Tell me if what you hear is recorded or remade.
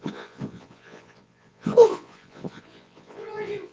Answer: remade